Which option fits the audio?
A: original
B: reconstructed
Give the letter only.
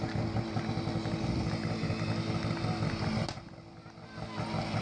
A